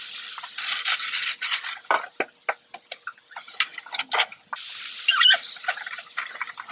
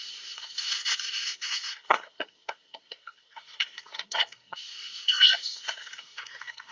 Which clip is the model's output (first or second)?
second